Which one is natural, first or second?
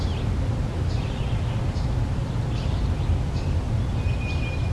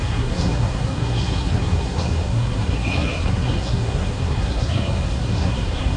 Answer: first